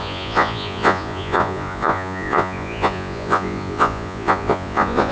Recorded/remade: remade